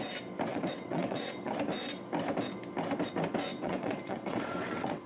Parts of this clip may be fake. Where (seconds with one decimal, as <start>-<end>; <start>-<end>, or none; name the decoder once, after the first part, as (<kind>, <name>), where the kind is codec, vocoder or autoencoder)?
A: 0.5-1.5 (vocoder, WaveNeXt); 3.5-5.1

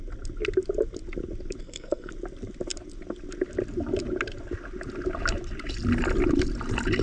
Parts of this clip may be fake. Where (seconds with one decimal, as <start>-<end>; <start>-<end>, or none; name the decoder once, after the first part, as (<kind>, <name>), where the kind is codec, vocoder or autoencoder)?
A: 1.6-2.1 (codec, SNAC)